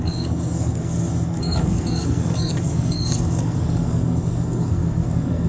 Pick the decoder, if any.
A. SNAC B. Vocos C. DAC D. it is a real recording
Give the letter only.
A